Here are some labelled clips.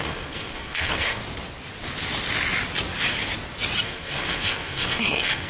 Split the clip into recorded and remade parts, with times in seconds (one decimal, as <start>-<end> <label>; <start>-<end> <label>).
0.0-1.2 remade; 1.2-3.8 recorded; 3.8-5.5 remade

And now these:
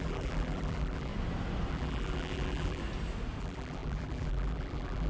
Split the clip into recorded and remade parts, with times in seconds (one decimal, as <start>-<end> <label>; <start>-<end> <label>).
0.0-1.1 remade; 1.1-1.7 recorded; 1.7-2.8 remade; 2.8-3.4 recorded; 3.4-5.1 remade

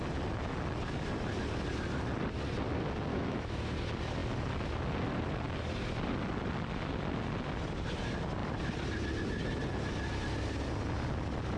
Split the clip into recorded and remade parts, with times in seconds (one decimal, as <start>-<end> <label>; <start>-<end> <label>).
0.0-3.1 recorded; 3.1-3.6 remade; 3.6-11.6 recorded

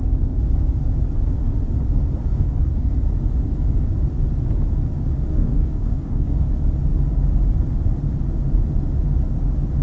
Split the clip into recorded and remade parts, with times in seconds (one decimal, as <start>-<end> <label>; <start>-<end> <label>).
0.0-2.2 recorded; 2.2-2.9 remade; 2.9-5.3 recorded; 5.3-6.5 remade; 6.5-9.8 recorded

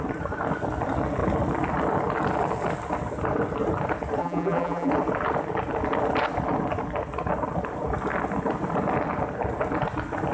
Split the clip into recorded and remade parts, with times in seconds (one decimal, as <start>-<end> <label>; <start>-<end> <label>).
0.0-4.2 recorded; 4.2-4.9 remade; 4.9-10.3 recorded

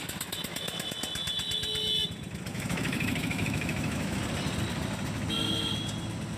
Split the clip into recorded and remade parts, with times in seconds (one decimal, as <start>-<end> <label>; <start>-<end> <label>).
0.0-2.5 recorded; 2.5-4.2 remade; 4.2-6.4 recorded